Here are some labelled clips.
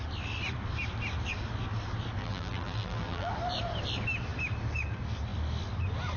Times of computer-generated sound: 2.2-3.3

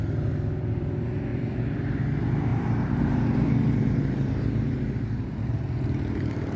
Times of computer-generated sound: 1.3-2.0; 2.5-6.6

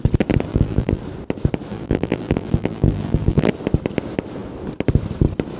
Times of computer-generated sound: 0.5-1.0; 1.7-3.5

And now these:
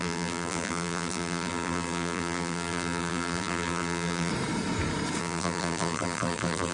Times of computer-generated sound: 0.0-4.3; 5.2-6.7

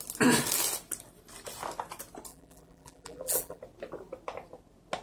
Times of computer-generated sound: 2.3-3.6